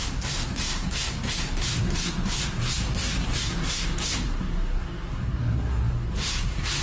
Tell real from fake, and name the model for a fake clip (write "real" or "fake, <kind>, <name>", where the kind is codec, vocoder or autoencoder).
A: fake, codec, SNAC